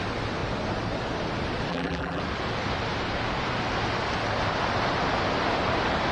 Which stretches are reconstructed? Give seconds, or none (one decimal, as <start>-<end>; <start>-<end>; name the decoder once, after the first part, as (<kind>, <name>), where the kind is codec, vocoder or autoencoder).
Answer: 1.7-2.2 (vocoder, BigVGAN v2)